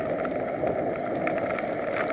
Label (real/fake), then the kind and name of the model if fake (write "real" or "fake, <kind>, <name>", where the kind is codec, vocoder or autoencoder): real